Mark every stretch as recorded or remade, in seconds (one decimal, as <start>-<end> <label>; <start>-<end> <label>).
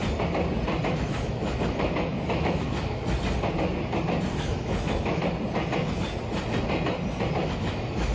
0.0-0.9 recorded; 0.9-3.0 remade; 3.0-4.3 recorded; 4.3-5.2 remade; 5.2-7.4 recorded; 7.4-8.1 remade